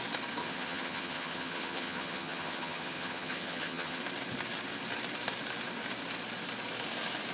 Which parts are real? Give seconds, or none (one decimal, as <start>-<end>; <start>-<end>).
0.0-0.4; 4.0-7.3